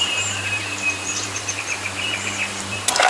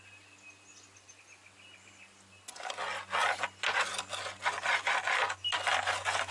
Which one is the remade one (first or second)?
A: first